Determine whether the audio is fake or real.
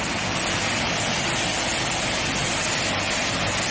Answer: real